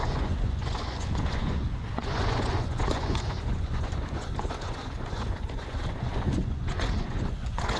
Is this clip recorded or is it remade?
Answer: remade